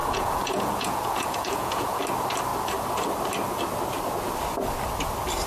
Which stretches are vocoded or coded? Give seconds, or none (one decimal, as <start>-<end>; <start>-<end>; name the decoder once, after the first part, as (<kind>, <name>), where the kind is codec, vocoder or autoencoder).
0.0-2.0 (vocoder, Vocos)